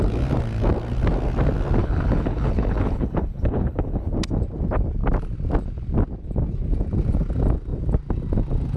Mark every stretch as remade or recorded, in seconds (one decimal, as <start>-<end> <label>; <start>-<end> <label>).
0.0-1.8 recorded; 1.8-4.1 remade; 4.1-8.8 recorded